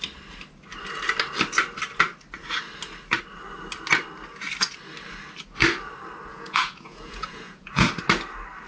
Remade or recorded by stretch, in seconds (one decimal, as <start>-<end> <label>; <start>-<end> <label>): 0.0-6.3 recorded; 6.3-7.9 remade; 7.9-8.7 recorded